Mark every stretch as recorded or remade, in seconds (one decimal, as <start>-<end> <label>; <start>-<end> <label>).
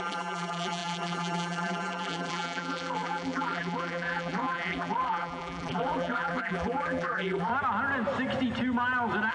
0.0-7.5 remade; 7.5-9.3 recorded